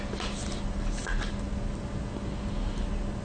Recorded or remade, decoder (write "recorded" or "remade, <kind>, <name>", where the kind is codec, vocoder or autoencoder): recorded